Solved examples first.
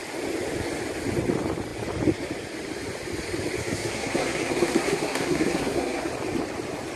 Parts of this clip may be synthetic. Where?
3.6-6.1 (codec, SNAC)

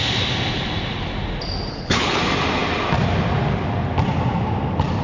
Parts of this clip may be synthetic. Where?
1.7-2.2 (codec, HILCodec)

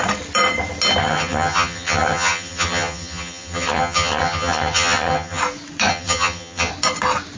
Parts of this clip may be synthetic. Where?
1.0-5.4 (vocoder, HiFi-GAN); 5.9-6.7

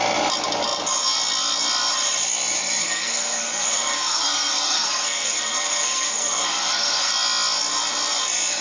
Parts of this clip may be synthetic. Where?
2.8-7.1 (codec, SNAC)

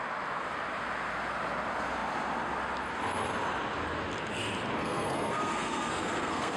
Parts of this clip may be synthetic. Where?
4.8-6.6 (codec, SNAC)